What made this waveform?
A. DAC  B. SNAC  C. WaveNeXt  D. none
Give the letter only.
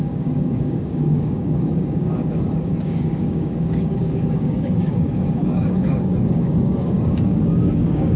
A